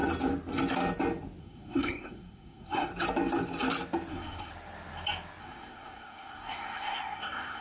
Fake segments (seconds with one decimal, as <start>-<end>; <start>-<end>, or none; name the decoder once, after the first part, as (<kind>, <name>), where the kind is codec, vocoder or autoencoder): 1.4-2.9 (codec, SNAC); 4.1-4.5; 5.4-7.6

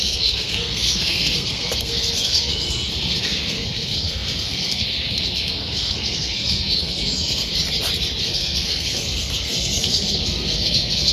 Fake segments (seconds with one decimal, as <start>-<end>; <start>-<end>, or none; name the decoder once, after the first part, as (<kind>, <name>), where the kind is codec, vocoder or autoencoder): 0.0-7.5 (codec, SNAC); 8.2-11.1

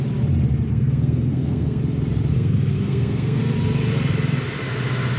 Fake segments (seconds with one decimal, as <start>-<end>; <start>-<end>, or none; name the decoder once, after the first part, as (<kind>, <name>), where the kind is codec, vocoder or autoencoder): 0.7-1.8 (codec, SNAC); 2.3-3.4

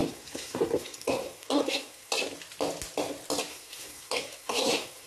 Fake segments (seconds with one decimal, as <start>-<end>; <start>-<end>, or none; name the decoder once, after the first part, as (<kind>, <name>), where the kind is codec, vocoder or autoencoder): 0.0-2.1 (codec, SNAC); 3.5-5.1